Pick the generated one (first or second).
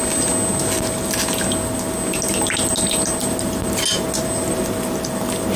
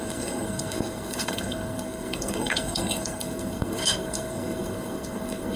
second